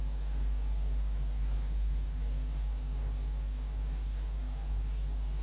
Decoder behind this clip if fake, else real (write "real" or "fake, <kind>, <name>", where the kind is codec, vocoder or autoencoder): fake, codec, DAC